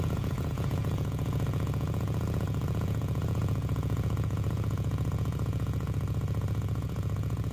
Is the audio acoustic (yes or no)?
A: no